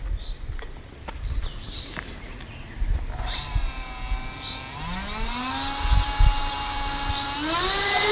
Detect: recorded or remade recorded